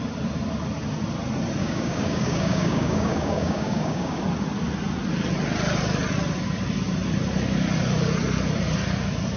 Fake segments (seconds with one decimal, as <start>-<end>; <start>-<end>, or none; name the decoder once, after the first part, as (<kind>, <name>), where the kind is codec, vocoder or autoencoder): 1.6-4.2 (codec, DAC)